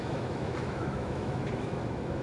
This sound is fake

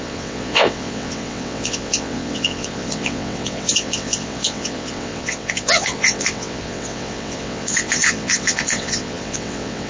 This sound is fake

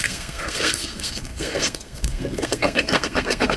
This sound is fake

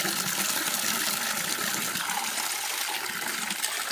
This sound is real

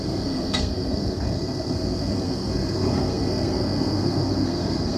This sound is fake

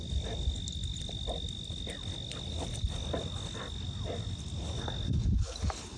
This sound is real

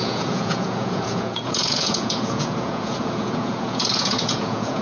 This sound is fake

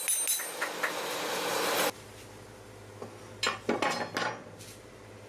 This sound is real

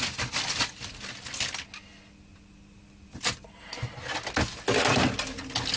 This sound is real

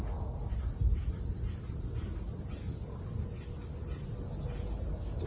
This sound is real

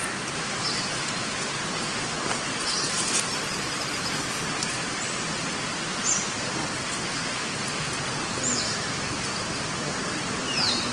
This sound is real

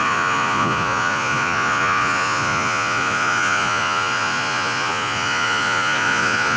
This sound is fake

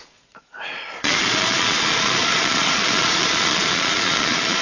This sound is fake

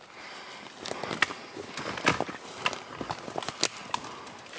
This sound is real